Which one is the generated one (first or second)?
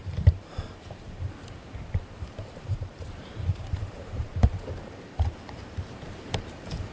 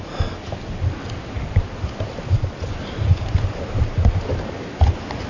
first